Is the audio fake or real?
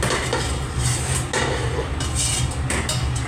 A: real